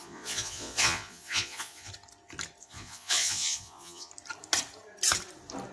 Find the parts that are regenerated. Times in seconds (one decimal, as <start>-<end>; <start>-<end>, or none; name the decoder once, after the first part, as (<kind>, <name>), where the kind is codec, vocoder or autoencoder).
0.0-1.9 (vocoder, Vocos); 2.6-4.1